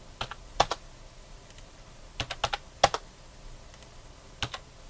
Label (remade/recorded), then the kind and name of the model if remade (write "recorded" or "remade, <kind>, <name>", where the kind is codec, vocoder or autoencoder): recorded